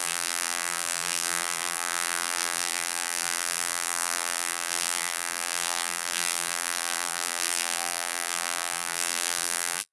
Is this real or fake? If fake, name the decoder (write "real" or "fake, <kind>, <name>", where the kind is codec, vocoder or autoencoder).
fake, vocoder, BigVGAN v2